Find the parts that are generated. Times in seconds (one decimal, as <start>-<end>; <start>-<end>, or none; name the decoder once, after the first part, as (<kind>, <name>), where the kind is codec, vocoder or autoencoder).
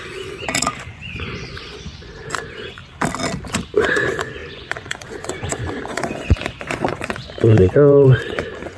0.0-2.8 (vocoder, Vocos); 3.5-8.8